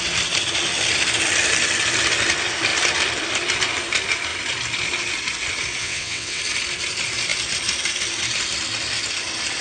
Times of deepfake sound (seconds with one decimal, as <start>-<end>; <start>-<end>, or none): 5.8-6.4

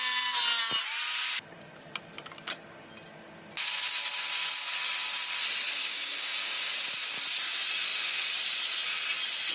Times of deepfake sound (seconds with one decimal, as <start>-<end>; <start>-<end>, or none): 5.8-6.7

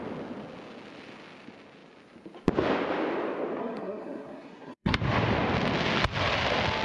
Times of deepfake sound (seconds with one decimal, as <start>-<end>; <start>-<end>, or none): 3.6-5.0

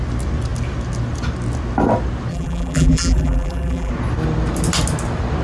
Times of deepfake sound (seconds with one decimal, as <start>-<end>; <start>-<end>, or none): 2.3-3.9

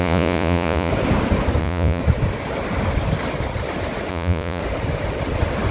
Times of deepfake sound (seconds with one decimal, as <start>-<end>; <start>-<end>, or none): 0.0-0.9; 1.6-2.0; 4.1-4.6

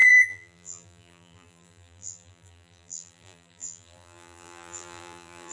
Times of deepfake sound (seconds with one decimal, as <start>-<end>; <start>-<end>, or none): 0.0-5.5

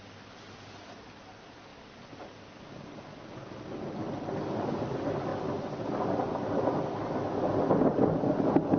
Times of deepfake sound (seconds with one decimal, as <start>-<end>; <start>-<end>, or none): none